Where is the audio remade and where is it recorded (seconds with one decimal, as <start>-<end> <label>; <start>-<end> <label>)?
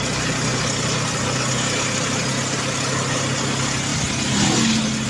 0.0-5.1 recorded